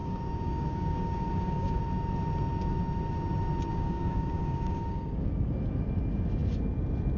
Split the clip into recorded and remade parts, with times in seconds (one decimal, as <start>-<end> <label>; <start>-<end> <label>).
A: 0.0-1.8 remade; 1.8-3.7 recorded; 3.7-5.5 remade; 5.5-7.2 recorded